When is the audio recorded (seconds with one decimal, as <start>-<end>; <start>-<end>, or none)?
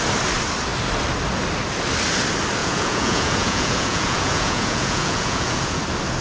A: 0.0-2.6; 5.8-6.2